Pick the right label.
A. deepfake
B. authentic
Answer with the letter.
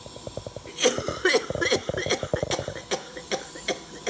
B